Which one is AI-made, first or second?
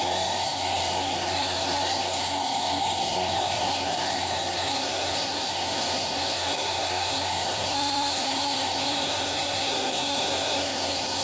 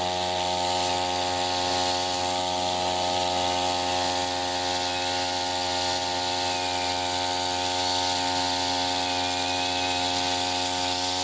first